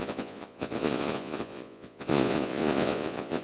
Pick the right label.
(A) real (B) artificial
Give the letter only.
B